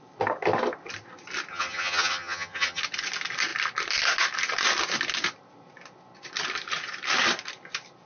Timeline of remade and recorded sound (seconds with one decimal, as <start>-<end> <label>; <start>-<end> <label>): 0.0-1.5 recorded; 1.5-2.8 remade; 2.8-8.1 recorded